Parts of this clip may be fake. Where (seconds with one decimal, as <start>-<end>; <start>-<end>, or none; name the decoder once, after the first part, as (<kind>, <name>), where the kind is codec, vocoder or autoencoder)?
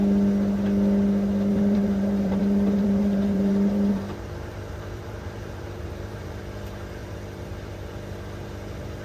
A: 1.5-6.4 (vocoder, BigVGAN v2); 7.0-7.9